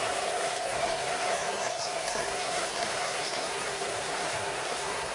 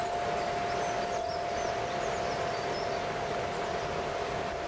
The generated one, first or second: first